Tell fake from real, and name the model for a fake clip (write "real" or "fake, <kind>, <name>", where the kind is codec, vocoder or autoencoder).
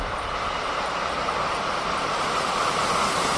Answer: real